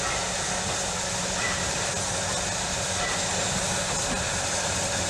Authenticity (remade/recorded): recorded